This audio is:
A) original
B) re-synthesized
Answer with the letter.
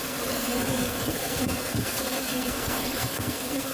B